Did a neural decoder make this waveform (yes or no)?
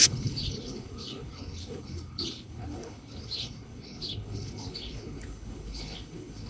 yes